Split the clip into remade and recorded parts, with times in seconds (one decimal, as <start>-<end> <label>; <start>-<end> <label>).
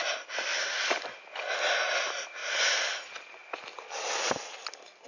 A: 0.0-5.1 recorded